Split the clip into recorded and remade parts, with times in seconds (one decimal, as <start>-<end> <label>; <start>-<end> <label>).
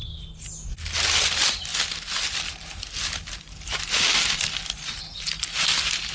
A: 0.0-6.1 recorded